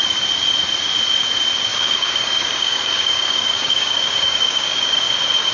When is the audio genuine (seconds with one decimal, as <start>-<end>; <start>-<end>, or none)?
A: 0.0-1.7; 5.0-5.5